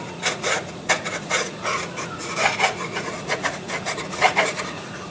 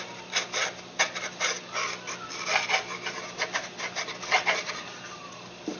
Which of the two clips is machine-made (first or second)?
first